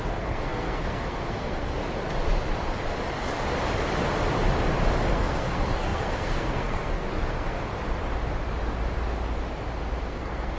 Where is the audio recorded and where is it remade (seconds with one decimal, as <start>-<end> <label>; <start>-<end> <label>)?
0.0-1.8 remade; 1.8-5.1 recorded; 5.1-7.7 remade; 7.7-10.0 recorded; 10.0-10.6 remade